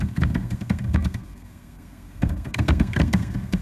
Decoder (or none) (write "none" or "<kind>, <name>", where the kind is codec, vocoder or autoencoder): codec, SNAC